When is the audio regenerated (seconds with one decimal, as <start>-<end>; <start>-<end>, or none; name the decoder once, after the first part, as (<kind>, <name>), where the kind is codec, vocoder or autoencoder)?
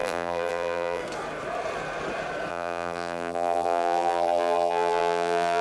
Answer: 0.0-1.0 (vocoder, BigVGAN v2); 2.5-5.6